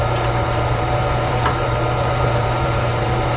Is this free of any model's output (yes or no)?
no